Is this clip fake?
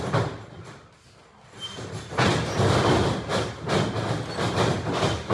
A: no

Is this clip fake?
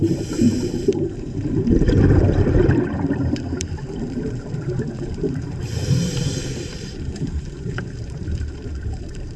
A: yes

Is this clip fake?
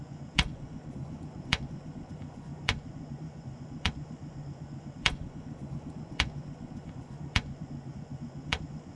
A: yes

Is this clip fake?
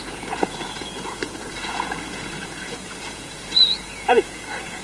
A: yes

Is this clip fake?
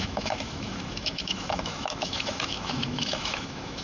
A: yes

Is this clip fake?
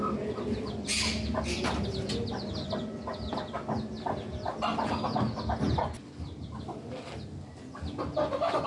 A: no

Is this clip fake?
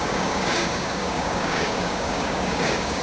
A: yes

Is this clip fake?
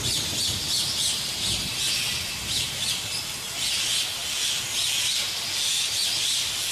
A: no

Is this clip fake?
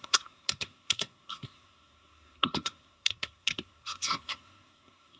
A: yes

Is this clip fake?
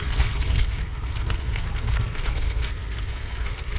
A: yes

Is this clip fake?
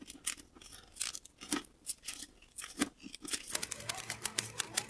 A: no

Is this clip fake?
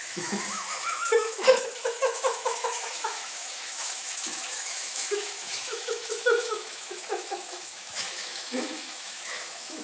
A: yes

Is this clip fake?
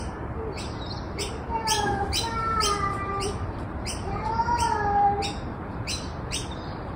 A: yes